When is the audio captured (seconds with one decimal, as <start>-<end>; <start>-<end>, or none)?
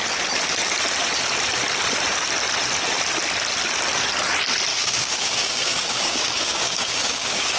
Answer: 0.0-4.7